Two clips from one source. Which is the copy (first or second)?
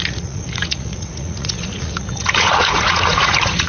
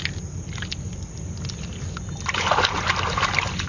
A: first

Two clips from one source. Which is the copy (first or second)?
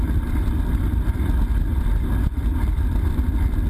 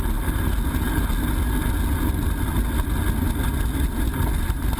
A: first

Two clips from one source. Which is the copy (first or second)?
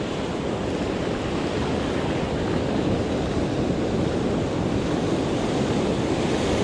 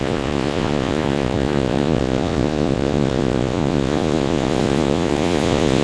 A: second